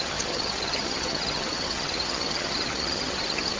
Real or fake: fake